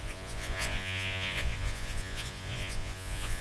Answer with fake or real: fake